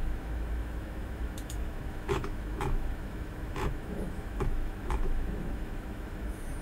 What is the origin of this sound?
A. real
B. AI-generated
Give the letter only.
B